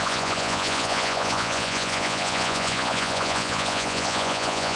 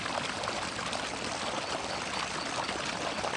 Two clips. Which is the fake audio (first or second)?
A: first